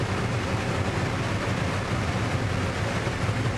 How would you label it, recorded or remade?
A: recorded